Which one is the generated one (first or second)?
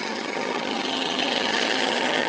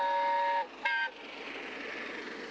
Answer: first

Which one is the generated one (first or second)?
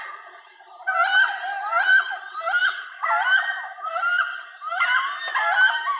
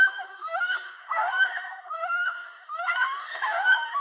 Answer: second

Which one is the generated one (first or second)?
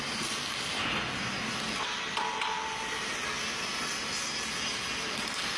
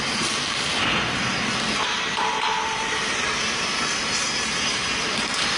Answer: second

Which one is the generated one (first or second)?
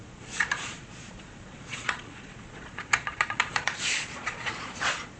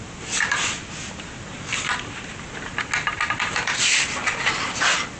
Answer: first